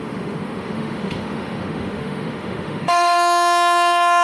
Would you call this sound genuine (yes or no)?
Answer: no